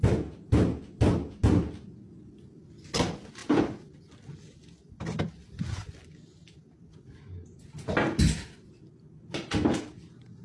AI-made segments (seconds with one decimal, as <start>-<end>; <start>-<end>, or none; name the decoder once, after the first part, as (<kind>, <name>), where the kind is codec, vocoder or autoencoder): none